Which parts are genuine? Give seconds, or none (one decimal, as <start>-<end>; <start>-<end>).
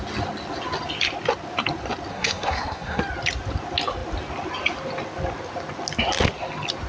0.0-2.1; 3.0-6.9